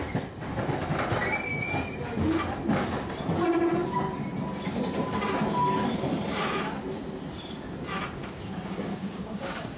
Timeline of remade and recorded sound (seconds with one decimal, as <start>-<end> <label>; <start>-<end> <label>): 0.0-8.9 recorded; 8.9-9.8 remade